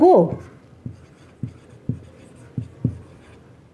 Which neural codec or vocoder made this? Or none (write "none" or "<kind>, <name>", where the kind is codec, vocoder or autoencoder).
none